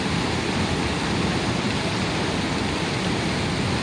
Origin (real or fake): real